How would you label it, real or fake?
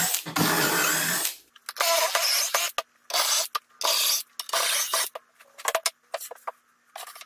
real